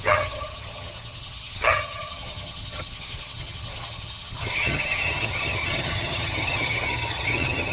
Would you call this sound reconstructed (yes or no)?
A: yes